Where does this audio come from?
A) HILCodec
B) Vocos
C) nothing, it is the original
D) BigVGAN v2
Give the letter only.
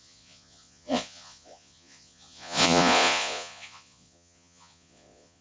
B